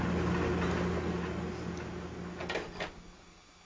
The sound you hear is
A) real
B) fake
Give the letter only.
A